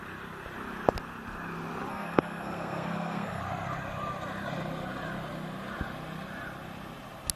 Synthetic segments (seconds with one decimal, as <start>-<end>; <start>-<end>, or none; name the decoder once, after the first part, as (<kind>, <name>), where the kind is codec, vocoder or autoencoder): 1.9-3.4 (codec, SNAC)